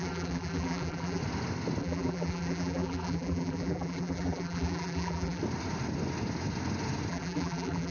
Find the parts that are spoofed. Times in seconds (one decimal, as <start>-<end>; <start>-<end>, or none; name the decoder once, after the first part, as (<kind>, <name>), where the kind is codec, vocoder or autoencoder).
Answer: 0.0-1.2 (vocoder, BigVGAN v2); 1.8-5.4; 7.1-7.9